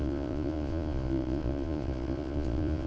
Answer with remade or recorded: remade